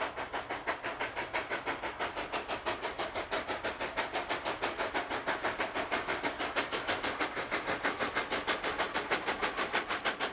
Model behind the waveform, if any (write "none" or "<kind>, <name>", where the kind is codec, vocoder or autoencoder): none